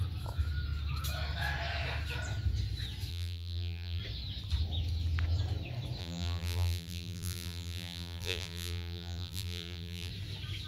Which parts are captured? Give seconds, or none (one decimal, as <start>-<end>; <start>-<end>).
0.0-3.1; 4.0-6.0; 10.1-10.7